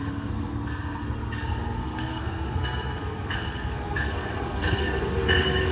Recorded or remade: remade